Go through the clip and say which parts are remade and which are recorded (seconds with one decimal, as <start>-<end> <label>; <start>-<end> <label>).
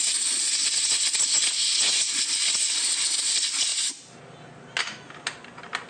0.0-5.9 recorded